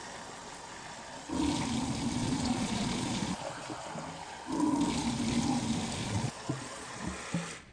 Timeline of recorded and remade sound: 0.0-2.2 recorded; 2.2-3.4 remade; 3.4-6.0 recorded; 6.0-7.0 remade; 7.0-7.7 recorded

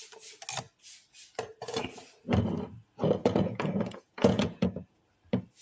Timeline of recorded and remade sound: 0.0-3.2 recorded; 3.2-5.0 remade; 5.0-5.6 recorded

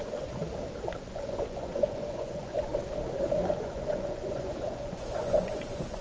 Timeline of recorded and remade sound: 0.0-0.4 remade; 0.4-1.0 recorded; 1.0-2.7 remade; 2.7-3.6 recorded; 3.6-6.0 remade